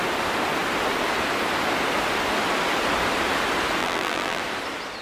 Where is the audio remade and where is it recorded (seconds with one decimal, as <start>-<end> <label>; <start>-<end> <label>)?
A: 0.0-3.8 recorded; 3.8-4.4 remade; 4.4-5.0 recorded